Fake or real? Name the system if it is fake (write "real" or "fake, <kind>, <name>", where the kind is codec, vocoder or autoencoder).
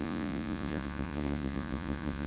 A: fake, vocoder, Vocos